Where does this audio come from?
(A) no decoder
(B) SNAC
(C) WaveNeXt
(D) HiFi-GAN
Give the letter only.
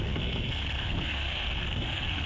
B